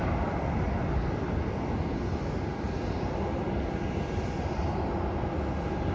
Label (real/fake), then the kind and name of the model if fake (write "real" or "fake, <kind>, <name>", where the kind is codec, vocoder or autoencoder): real